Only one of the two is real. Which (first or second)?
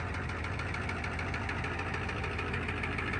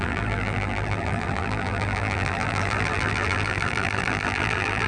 first